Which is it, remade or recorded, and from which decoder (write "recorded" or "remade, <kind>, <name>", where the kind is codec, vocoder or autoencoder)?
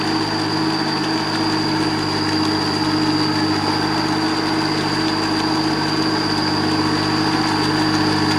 recorded